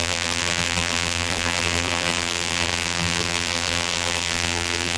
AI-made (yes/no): yes